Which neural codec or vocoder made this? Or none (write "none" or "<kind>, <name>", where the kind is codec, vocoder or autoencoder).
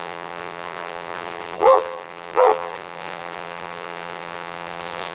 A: vocoder, BigVGAN v2